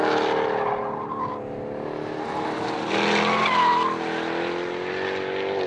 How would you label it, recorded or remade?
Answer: recorded